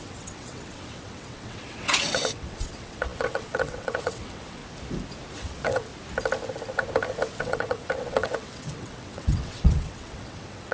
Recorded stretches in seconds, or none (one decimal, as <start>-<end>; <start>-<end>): 4.6-5.3; 5.9-7.4

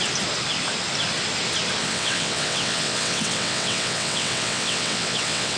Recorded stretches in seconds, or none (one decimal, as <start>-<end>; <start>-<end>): 0.0-1.8

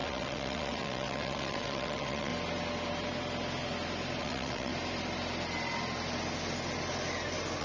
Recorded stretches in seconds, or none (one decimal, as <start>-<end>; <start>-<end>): 2.3-4.2; 4.7-7.6

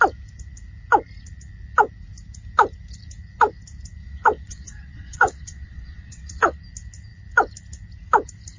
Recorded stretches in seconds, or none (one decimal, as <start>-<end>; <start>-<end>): 0.0-4.0; 6.6-8.6

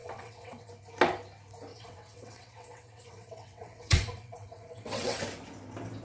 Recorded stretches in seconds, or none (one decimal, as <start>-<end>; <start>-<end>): 0.7-1.7; 5.2-6.0